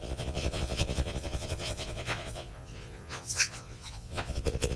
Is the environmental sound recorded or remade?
remade